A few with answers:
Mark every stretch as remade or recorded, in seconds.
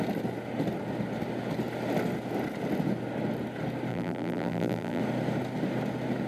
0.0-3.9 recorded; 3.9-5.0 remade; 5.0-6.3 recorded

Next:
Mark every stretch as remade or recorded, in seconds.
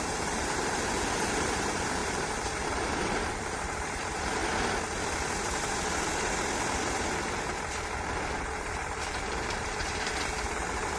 0.0-4.4 remade; 4.4-8.4 recorded; 8.4-11.0 remade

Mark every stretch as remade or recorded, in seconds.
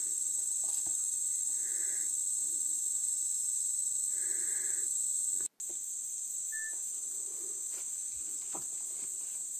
0.0-1.7 remade; 1.7-2.3 recorded; 2.3-5.1 remade; 5.1-8.5 recorded; 8.5-9.6 remade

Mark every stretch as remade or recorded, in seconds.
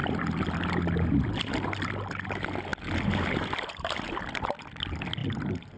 0.0-0.9 remade; 0.9-2.7 recorded; 2.7-4.2 remade; 4.2-5.2 recorded; 5.2-5.8 remade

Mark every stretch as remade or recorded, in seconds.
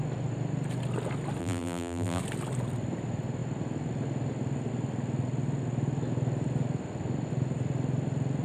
0.0-1.4 recorded; 1.4-2.2 remade; 2.2-8.4 recorded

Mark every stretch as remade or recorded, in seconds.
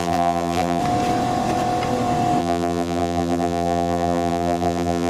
0.0-0.8 remade; 0.8-2.4 recorded; 2.4-5.1 remade